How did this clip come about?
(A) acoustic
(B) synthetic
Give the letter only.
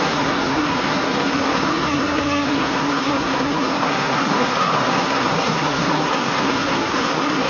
B